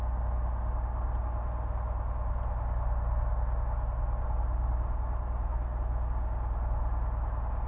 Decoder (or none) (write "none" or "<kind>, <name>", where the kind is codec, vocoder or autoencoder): none